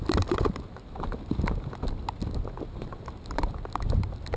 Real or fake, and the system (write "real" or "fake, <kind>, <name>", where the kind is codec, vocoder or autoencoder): real